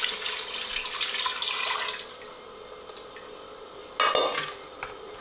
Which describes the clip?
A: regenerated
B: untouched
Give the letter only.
B